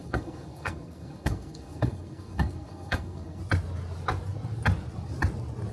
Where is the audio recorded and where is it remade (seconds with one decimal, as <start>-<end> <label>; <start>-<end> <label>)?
0.0-3.4 remade; 3.4-5.7 recorded